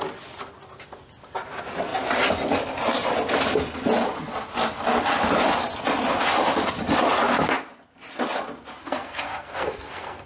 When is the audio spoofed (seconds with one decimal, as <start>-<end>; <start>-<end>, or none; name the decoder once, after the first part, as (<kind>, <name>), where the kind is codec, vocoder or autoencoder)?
8.8-10.3 (codec, SNAC)